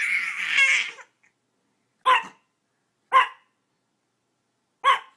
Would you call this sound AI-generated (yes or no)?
no